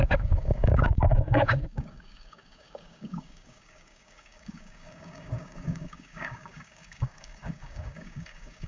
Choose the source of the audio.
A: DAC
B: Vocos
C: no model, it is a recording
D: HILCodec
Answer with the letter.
A